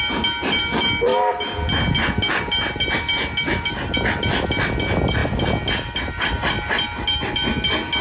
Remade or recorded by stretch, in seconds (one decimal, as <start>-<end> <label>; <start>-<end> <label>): 0.0-8.0 recorded